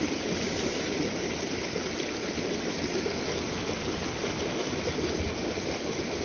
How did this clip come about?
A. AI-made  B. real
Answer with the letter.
B